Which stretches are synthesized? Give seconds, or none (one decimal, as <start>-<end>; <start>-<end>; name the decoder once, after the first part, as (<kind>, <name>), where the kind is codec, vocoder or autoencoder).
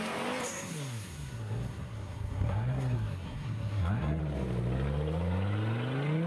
0.4-4.2 (codec, SNAC)